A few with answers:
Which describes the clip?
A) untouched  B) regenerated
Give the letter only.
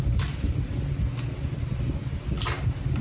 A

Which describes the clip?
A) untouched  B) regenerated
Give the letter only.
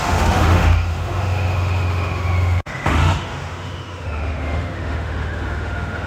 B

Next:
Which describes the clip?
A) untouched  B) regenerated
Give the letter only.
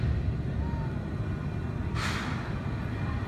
A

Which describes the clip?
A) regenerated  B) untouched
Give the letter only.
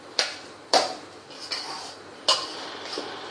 B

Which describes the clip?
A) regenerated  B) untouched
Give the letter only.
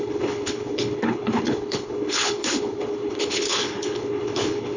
A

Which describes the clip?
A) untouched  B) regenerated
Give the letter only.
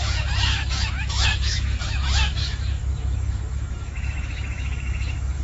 B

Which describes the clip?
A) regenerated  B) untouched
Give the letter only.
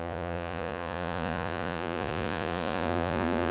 A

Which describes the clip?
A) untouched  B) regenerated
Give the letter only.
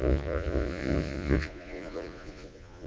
B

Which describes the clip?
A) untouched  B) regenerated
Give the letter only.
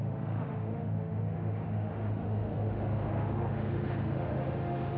B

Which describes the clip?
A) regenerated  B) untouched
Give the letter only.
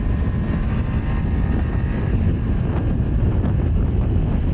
B